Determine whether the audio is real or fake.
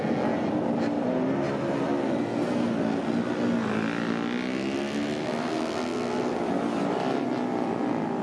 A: real